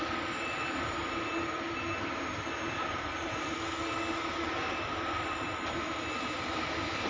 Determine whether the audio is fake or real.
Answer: real